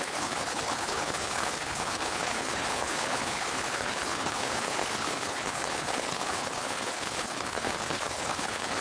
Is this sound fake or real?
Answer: fake